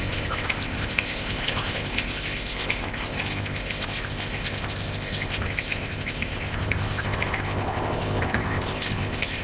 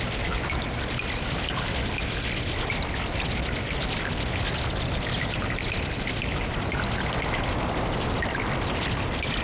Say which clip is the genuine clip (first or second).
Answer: second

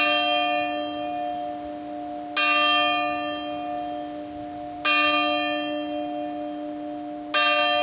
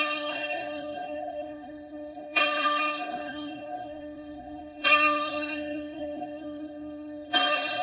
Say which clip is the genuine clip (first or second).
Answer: first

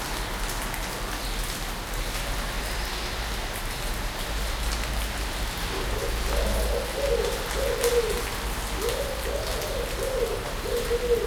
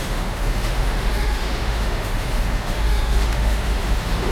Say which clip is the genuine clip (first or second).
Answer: first